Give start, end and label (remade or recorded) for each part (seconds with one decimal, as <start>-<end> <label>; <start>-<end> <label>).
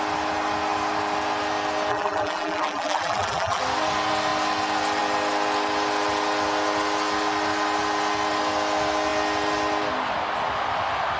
0.0-1.9 recorded; 1.9-3.6 remade; 3.6-11.2 recorded